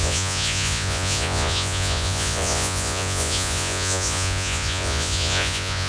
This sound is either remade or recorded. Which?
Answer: remade